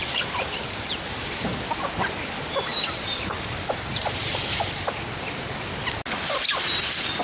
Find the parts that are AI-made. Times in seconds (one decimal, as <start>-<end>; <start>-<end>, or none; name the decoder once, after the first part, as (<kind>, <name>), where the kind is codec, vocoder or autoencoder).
0.0-1.3 (vocoder, BigVGAN v2); 2.7-5.4